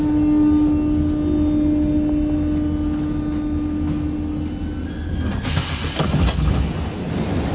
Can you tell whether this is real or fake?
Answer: real